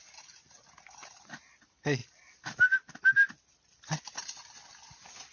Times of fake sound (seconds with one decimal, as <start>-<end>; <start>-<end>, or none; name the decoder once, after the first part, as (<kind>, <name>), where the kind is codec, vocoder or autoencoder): none